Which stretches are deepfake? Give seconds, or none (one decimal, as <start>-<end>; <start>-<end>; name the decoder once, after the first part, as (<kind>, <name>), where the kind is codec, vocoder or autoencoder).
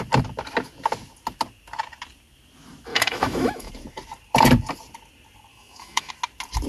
2.9-3.7 (autoencoder, DAC-VAE); 5.5-6.1